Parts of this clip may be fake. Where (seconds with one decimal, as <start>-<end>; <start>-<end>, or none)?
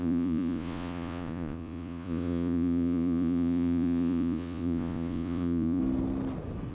0.0-5.8